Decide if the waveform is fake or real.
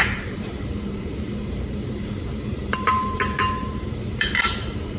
fake